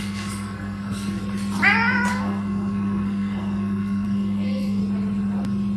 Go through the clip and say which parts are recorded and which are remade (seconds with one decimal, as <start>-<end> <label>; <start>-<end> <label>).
0.0-1.2 remade; 1.2-2.1 recorded; 2.1-4.8 remade; 4.8-5.8 recorded